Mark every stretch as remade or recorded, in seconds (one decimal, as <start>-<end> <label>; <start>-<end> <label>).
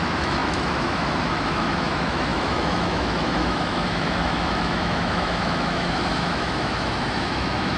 0.0-7.8 remade